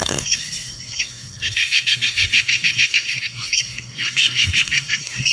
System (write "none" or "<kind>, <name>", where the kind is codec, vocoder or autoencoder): codec, SNAC